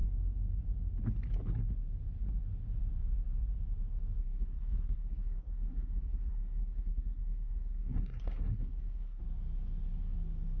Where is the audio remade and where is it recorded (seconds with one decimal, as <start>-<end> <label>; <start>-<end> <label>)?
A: 0.0-4.2 recorded; 4.2-9.2 remade; 9.2-10.6 recorded